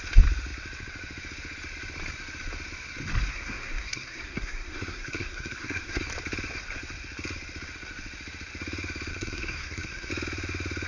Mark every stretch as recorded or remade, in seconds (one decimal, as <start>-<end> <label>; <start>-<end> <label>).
0.0-3.3 recorded; 3.3-6.0 remade; 6.0-9.1 recorded; 9.1-10.1 remade; 10.1-10.9 recorded